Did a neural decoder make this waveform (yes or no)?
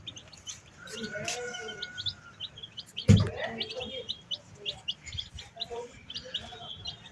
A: yes